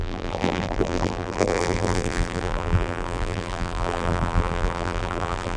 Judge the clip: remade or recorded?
remade